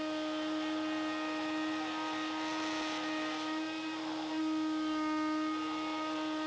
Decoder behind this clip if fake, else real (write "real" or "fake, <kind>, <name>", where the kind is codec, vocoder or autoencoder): real